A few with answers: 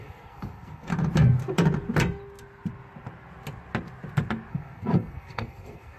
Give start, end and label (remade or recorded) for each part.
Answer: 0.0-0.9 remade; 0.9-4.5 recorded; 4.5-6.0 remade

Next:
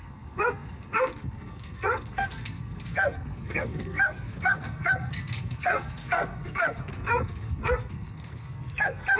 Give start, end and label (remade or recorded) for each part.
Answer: 0.0-9.2 remade

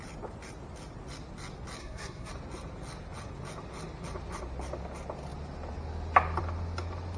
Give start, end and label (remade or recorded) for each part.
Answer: 0.0-1.8 recorded; 1.8-2.3 remade; 2.3-7.2 recorded

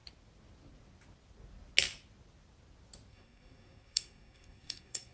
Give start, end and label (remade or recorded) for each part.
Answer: 0.0-3.1 recorded; 3.1-5.1 remade

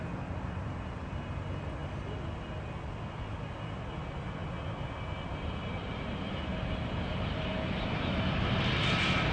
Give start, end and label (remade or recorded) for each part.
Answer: 0.0-9.3 recorded